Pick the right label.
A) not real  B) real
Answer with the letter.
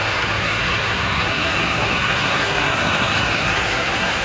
A